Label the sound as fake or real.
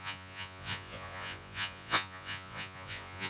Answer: fake